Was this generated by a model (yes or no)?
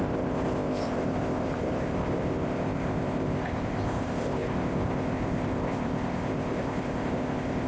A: yes